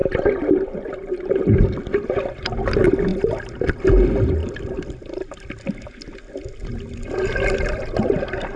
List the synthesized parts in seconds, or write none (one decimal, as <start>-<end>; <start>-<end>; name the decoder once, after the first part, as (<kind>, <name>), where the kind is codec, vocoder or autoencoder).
0.0-2.2 (vocoder, BigVGAN v2); 3.1-3.7

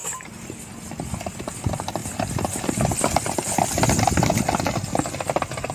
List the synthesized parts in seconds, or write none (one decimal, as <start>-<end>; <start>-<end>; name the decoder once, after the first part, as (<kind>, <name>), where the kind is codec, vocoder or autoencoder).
none